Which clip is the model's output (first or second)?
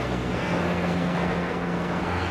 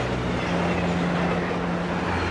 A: first